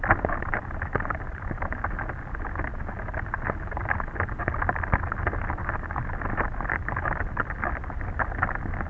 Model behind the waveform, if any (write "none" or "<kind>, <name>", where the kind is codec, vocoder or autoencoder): none